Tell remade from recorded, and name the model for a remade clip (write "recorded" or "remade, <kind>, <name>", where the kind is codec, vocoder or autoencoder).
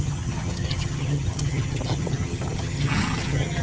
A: remade, vocoder, HiFi-GAN